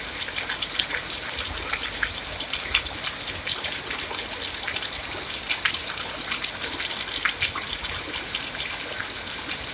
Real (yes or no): yes